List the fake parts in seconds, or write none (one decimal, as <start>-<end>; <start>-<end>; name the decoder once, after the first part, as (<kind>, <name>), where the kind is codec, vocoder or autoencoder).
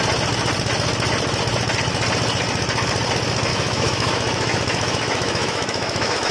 3.5-6.3 (autoencoder, DAC-VAE)